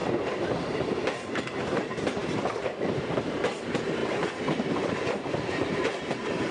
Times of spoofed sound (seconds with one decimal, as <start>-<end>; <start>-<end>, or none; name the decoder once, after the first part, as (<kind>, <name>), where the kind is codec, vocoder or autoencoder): 0.0-6.5 (vocoder, BigVGAN v2)